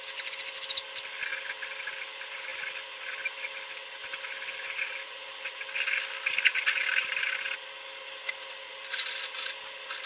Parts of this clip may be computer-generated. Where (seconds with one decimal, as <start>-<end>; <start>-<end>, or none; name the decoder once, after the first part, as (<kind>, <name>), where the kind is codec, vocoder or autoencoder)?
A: 2.5-3.0 (vocoder, BigVGAN v2)